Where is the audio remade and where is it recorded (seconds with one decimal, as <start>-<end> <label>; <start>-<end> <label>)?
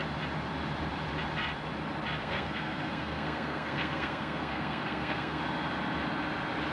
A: 0.0-2.2 recorded; 2.2-5.4 remade; 5.4-6.7 recorded